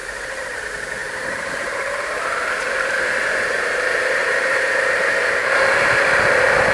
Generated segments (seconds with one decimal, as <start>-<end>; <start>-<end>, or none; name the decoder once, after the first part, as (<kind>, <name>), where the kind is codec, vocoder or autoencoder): 0.0-0.6 (vocoder, BigVGAN v2); 1.0-2.2; 4.2-5.1